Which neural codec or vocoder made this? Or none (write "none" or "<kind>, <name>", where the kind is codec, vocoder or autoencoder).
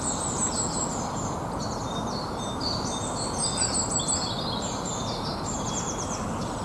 none